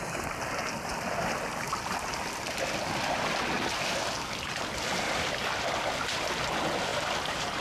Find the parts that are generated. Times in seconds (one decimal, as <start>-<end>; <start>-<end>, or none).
none